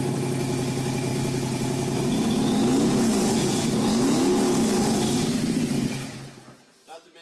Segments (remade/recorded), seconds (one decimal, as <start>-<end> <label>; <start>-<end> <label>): 0.0-7.2 recorded